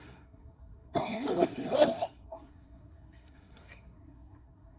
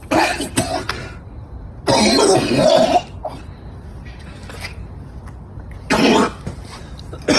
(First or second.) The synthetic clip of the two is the first